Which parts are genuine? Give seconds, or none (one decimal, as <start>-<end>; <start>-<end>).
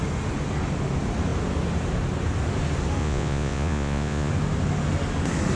0.0-3.0; 4.3-5.6